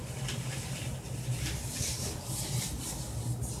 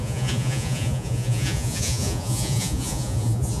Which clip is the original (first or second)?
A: first